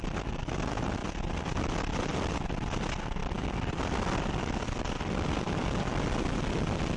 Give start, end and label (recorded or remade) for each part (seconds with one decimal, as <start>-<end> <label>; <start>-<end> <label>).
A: 0.0-1.0 recorded; 1.0-2.3 remade; 2.3-3.2 recorded; 3.2-6.6 remade; 6.6-7.0 recorded